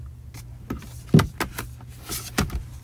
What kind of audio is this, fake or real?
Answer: real